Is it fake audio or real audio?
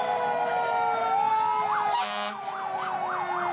real